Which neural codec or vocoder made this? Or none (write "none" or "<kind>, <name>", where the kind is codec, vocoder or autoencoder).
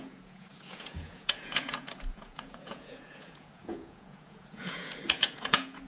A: vocoder, Vocos